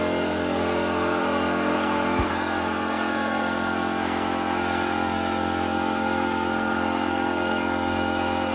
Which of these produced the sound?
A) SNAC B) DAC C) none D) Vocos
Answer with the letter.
A